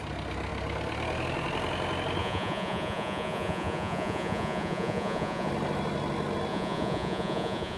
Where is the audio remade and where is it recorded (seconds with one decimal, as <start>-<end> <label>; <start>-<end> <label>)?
0.0-2.2 recorded; 2.2-5.5 remade; 5.5-6.5 recorded; 6.5-7.8 remade